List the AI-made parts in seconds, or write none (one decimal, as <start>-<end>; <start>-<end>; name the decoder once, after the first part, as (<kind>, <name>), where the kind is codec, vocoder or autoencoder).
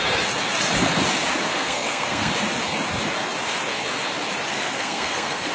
1.5-2.3 (codec, SNAC); 4.5-5.5